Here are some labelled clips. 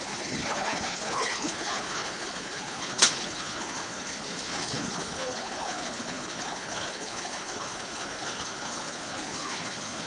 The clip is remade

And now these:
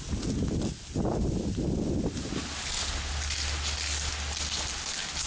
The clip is recorded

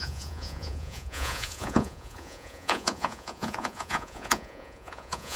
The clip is remade